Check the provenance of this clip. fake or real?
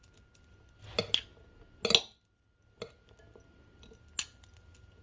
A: real